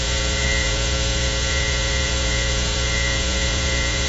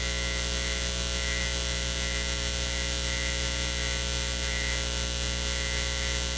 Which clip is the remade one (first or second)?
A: first